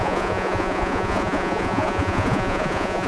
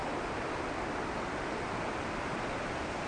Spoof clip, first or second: first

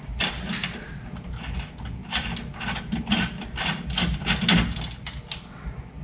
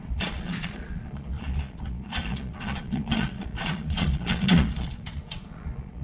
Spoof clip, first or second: second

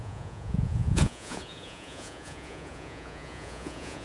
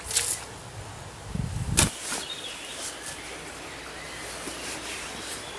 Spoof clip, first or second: first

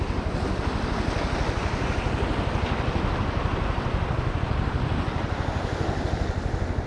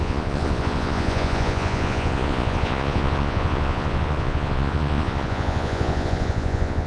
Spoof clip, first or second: second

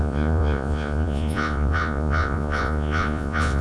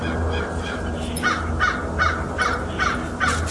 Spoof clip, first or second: first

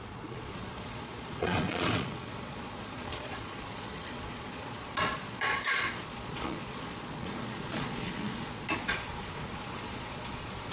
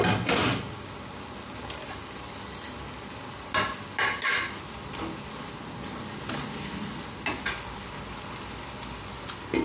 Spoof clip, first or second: first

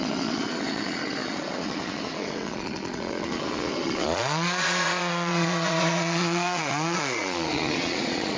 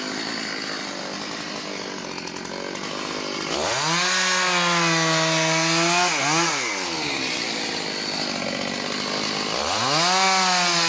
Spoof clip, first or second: first